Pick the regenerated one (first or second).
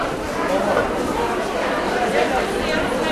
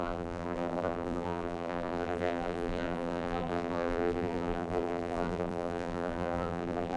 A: second